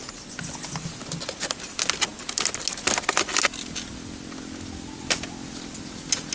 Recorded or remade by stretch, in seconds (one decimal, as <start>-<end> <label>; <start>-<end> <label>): 0.0-6.3 recorded

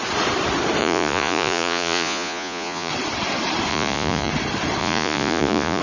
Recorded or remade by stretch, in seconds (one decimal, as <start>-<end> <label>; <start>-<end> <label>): 0.0-0.8 recorded; 0.8-2.9 remade; 2.9-3.7 recorded; 3.7-4.3 remade; 4.3-4.8 recorded; 4.8-5.8 remade

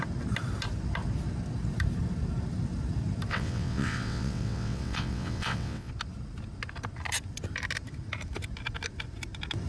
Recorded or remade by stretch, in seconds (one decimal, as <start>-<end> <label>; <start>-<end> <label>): 0.0-3.3 recorded; 3.3-5.9 remade; 5.9-9.7 recorded

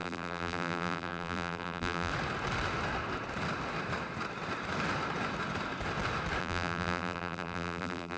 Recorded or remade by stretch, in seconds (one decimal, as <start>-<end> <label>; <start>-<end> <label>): 0.0-2.1 remade; 2.1-6.4 recorded; 6.4-8.2 remade

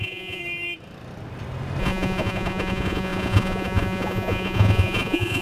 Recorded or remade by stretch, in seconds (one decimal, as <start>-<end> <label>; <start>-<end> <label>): 0.0-0.4 remade; 0.4-1.8 recorded; 1.8-5.4 remade